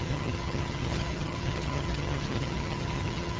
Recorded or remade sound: remade